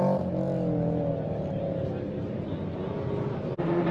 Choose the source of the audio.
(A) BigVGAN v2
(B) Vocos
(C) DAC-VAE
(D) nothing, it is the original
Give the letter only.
D